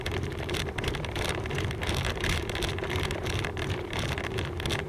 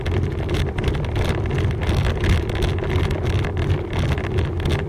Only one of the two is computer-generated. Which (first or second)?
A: first